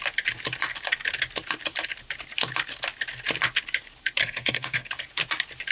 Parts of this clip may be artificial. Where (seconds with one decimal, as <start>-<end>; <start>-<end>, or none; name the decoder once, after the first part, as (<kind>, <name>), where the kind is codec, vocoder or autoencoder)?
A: 4.2-4.9 (codec, SNAC)

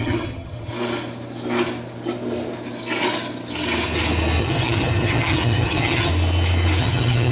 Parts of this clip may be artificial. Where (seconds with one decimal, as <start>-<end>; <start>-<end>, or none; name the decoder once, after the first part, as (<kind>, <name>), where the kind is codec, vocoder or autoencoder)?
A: 0.0-0.7 (vocoder, HiFi-GAN); 4.4-6.1; 6.8-7.3